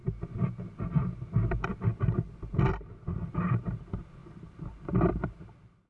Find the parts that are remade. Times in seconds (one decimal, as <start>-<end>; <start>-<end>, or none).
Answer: 4.2-5.4